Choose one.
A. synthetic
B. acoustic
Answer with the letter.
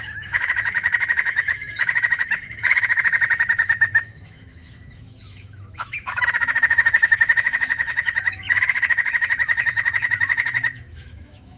A